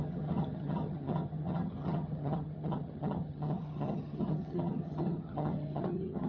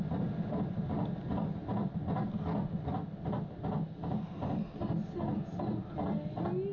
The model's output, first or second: first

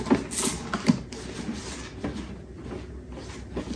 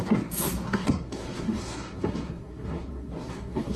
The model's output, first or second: second